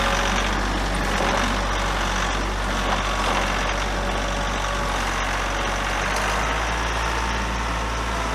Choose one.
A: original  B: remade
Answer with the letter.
A